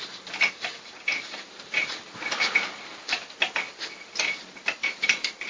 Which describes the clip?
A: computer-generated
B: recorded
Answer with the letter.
B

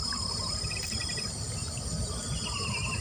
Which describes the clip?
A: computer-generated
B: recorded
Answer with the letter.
B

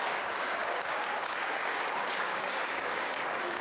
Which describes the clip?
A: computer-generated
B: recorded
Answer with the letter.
A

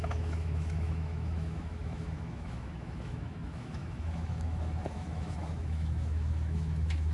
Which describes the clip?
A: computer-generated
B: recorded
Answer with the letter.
A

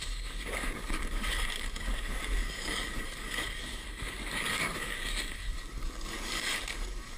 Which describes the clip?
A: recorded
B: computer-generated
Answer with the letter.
B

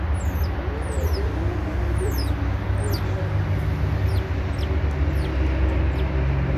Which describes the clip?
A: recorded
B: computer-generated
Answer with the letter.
A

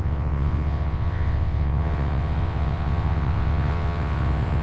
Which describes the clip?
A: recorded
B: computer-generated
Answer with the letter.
B